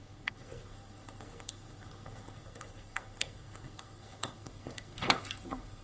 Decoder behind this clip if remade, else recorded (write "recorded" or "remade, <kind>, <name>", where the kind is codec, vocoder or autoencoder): remade, codec, SNAC